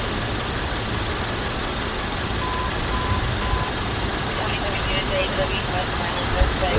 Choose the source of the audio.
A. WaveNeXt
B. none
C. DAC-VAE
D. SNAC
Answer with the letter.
B